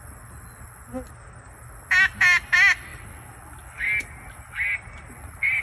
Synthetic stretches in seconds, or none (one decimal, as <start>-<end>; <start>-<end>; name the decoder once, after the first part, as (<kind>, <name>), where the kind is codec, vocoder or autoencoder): none